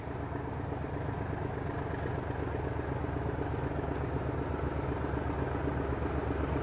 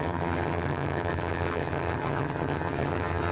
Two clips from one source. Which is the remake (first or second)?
second